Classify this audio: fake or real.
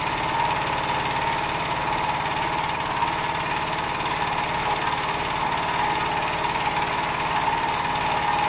real